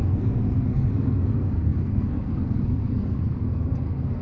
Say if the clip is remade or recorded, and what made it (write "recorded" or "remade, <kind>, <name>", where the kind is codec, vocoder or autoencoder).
remade, codec, SNAC